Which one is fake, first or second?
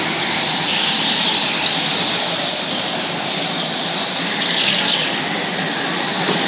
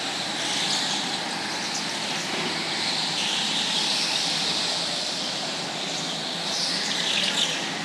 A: first